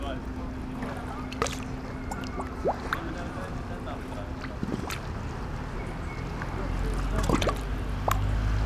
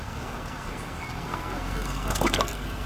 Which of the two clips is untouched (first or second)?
first